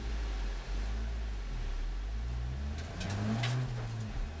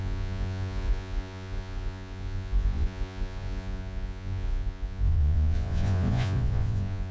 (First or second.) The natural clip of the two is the first